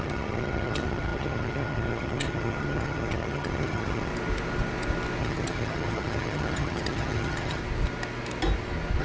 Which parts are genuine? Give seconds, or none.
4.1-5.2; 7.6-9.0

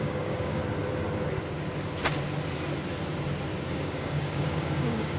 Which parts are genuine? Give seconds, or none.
0.6-3.7

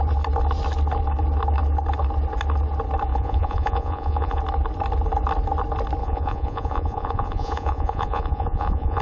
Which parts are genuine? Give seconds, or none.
0.0-3.1; 4.4-6.0

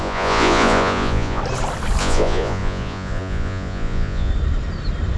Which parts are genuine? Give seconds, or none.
1.4-2.0; 4.3-5.2